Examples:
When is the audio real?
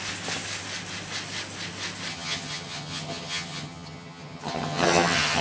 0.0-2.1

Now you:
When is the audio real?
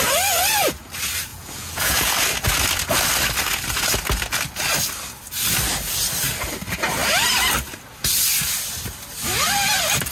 0.0-1.3; 2.1-10.1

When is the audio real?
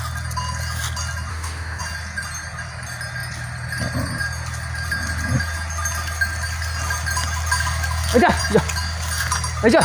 0.0-1.3; 1.8-9.8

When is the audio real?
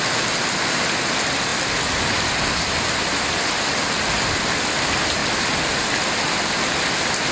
0.0-7.3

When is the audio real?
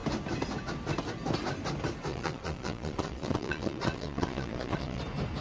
0.0-2.1; 5.0-5.4